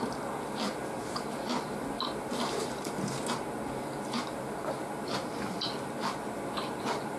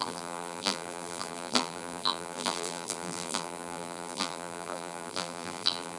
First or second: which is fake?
second